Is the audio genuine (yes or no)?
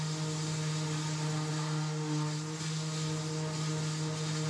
yes